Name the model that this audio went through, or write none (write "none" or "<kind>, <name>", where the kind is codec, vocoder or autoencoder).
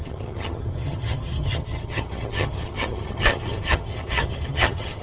vocoder, HiFi-GAN